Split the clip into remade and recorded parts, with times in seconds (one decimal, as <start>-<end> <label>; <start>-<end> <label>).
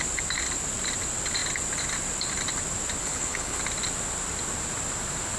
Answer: 0.0-3.0 recorded; 3.0-3.6 remade; 3.6-5.4 recorded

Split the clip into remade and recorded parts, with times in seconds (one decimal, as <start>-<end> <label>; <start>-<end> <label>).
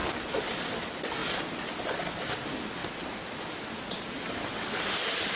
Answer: 0.0-5.4 recorded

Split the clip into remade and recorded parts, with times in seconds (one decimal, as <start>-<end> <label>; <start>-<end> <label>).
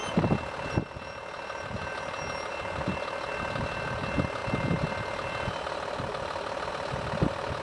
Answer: 0.0-7.6 recorded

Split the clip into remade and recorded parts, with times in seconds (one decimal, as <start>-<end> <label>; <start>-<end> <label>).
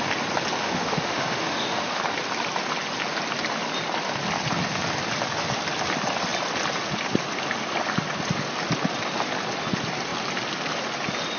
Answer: 0.0-0.6 recorded; 0.6-2.0 remade; 2.0-11.4 recorded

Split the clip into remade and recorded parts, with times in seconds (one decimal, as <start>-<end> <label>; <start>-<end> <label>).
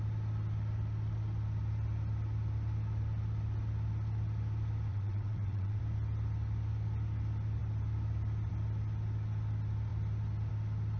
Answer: 0.0-4.9 recorded; 4.9-5.8 remade; 5.8-11.0 recorded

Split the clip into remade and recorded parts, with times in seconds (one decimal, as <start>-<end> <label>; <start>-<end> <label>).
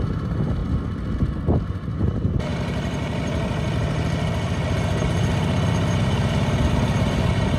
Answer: 0.0-0.6 remade; 0.6-1.6 recorded; 1.6-7.6 remade